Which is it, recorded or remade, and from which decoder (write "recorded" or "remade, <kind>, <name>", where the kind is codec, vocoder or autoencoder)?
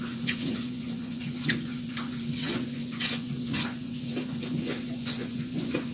remade, vocoder, Vocos